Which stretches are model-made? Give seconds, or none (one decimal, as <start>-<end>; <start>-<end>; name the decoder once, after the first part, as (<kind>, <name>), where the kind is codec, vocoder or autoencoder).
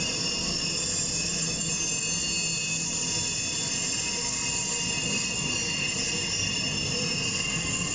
0.5-1.7 (autoencoder, DAC-VAE)